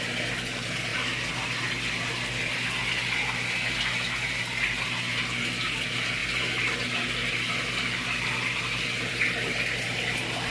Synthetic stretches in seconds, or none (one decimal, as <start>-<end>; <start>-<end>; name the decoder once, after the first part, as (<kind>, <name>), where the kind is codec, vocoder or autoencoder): none